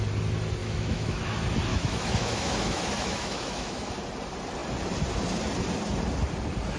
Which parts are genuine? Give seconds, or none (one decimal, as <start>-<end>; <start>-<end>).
0.0-0.6; 1.2-1.7; 3.9-6.8